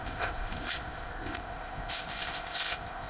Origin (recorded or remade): remade